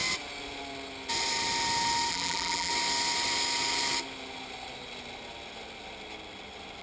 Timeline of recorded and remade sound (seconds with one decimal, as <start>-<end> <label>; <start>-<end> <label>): 0.0-2.1 recorded; 2.1-2.7 remade; 2.7-6.8 recorded